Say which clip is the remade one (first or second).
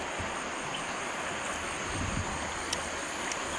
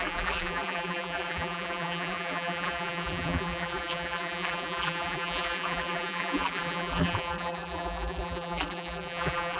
second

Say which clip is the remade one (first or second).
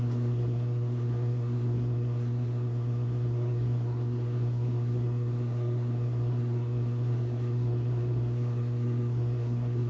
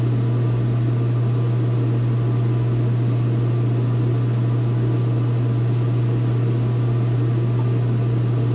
first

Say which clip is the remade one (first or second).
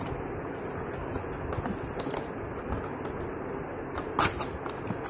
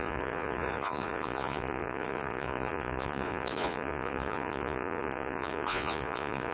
second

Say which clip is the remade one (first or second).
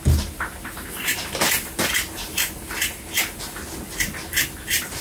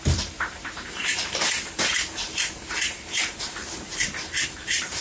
second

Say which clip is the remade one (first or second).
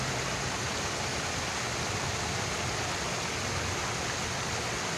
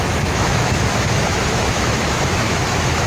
second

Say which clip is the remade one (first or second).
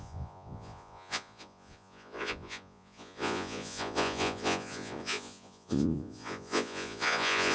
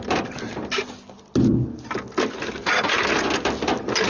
first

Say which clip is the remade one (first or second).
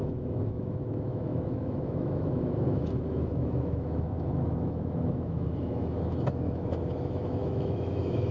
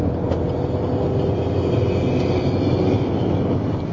first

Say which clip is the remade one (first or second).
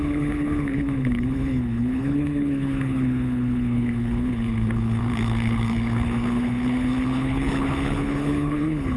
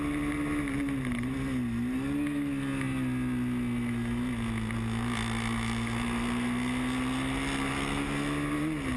first